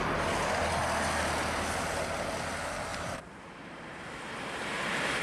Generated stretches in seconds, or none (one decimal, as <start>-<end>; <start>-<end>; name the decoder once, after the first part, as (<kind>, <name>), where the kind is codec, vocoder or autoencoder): 2.9-5.2 (vocoder, BigVGAN v2)

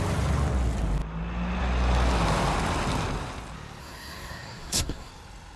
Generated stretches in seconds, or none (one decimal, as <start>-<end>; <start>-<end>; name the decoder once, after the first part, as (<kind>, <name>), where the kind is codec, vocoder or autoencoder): 3.8-5.1 (codec, SNAC)

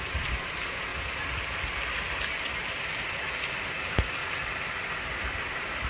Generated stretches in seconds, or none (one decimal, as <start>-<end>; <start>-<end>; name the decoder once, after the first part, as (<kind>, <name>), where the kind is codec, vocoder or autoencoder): 0.0-0.9 (vocoder, BigVGAN v2); 3.7-4.2; 5.5-5.9

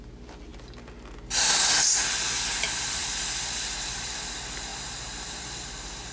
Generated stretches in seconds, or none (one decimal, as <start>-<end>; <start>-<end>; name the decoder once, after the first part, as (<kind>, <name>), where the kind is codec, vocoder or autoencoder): none